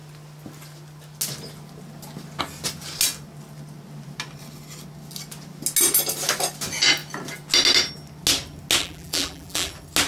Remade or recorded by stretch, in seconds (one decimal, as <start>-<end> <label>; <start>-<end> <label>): 0.0-8.8 recorded; 8.8-9.7 remade; 9.7-10.1 recorded